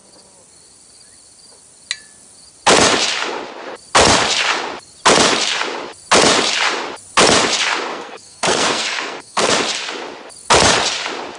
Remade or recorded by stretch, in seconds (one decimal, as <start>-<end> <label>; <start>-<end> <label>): 0.0-7.9 recorded; 7.9-9.5 remade; 9.5-11.4 recorded

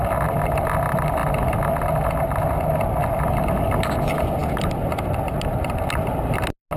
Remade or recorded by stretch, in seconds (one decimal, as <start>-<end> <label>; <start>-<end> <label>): 0.0-6.8 recorded

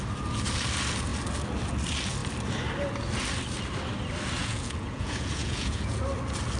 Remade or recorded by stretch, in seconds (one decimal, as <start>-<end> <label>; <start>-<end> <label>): 0.0-4.4 recorded; 4.4-6.0 remade; 6.0-6.6 recorded

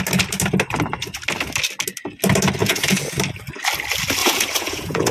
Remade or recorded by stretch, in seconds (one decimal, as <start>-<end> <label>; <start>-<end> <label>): 0.0-2.6 recorded; 2.6-3.1 remade; 3.1-4.2 recorded; 4.2-5.1 remade

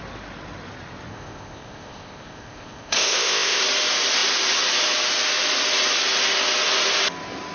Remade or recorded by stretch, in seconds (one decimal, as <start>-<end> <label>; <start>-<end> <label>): 0.0-1.1 recorded; 1.1-3.6 remade; 3.6-7.5 recorded

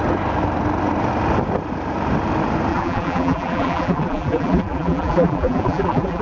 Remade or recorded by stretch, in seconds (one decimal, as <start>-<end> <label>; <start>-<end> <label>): 0.0-2.7 recorded; 2.7-6.2 remade